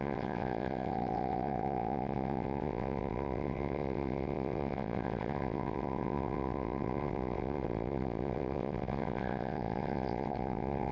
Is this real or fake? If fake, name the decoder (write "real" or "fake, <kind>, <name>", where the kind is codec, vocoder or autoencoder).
fake, vocoder, WaveNeXt